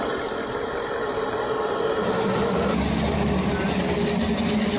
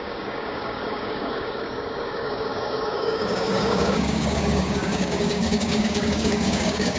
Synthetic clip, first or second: second